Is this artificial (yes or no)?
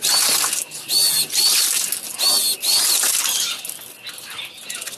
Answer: no